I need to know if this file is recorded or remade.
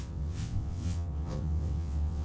remade